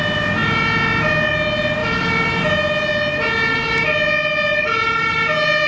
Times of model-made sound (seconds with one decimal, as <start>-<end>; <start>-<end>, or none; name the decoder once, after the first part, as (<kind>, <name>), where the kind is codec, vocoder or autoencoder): 1.8-2.3 (vocoder, BigVGAN v2); 4.5-5.1